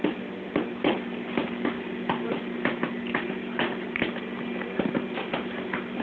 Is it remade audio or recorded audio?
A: recorded